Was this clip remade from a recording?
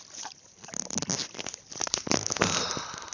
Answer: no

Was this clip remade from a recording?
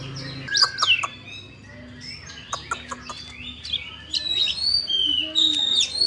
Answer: no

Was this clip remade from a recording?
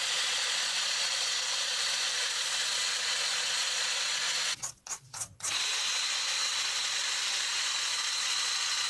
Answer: yes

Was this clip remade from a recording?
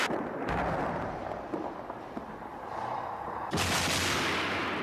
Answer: no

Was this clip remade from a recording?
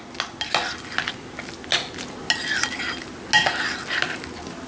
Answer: no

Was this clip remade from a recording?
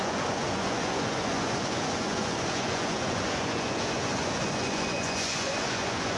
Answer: yes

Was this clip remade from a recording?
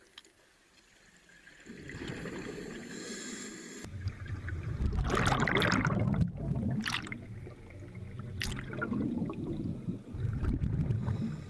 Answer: no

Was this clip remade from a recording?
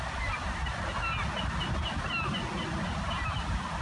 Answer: no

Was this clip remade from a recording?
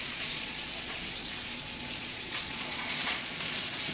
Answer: yes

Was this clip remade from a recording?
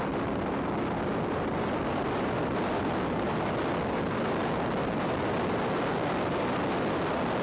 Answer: no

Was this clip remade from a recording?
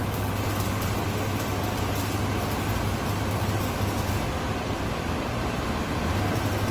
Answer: no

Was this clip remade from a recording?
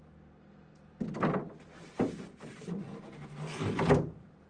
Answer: no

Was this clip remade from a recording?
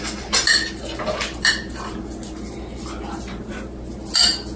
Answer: no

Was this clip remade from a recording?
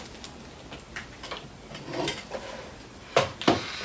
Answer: no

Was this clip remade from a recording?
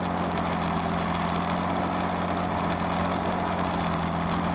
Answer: no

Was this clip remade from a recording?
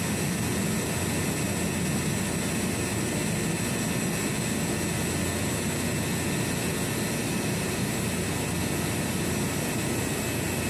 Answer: no